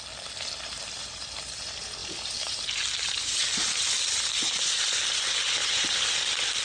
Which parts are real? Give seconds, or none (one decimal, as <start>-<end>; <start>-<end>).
0.0-2.0; 4.2-5.6; 6.1-6.6